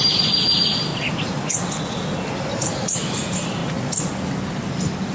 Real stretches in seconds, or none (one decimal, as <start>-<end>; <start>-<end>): 0.9-2.5; 3.6-5.1